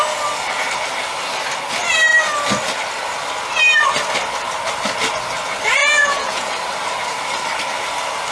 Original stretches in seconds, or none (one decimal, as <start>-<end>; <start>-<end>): 0.0-5.8; 6.5-8.3